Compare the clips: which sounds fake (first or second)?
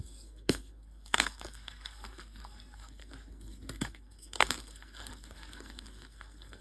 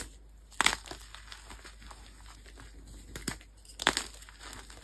first